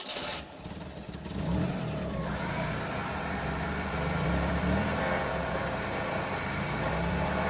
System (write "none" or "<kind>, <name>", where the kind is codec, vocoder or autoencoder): vocoder, BigVGAN v2